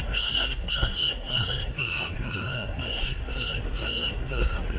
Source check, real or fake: fake